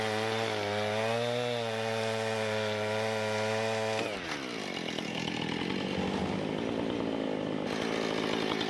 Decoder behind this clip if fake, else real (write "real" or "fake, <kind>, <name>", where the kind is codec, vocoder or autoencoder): real